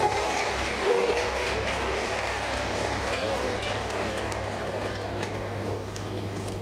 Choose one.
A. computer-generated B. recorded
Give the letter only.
A